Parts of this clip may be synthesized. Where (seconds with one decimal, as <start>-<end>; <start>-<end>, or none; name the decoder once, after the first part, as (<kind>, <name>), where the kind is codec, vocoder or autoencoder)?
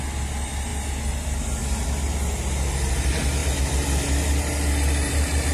none